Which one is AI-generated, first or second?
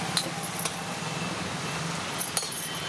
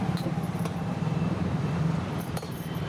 second